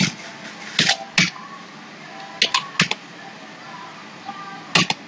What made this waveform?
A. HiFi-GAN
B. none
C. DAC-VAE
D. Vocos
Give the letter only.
B